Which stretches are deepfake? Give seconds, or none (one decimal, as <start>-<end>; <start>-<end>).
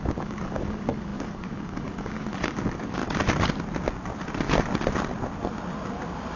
0.0-3.0